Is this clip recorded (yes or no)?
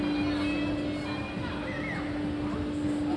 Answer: yes